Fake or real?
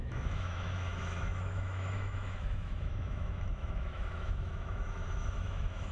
fake